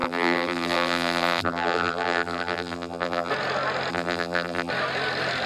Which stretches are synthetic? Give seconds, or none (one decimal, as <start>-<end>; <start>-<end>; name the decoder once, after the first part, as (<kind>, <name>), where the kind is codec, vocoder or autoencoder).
0.0-3.3 (vocoder, BigVGAN v2); 3.9-4.7